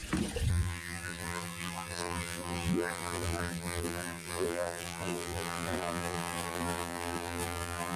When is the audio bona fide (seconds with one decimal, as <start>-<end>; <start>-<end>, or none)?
0.0-0.5